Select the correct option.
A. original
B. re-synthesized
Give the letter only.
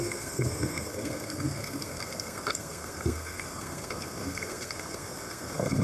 B